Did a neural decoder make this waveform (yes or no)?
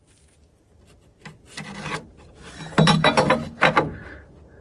no